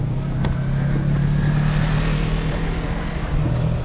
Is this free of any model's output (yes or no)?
yes